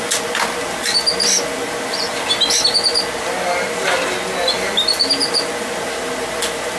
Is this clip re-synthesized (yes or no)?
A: no